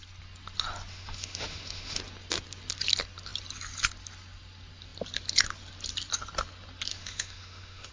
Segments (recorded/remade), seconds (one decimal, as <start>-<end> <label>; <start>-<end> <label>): 0.0-0.9 recorded; 0.9-2.0 remade; 2.0-6.9 recorded; 6.9-7.9 remade